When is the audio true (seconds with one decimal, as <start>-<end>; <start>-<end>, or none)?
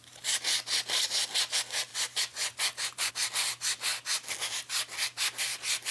0.0-1.9; 3.1-5.9